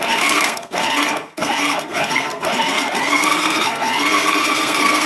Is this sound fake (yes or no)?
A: yes